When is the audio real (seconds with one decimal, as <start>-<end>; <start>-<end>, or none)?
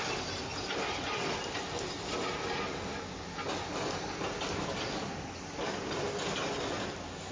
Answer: 0.0-7.3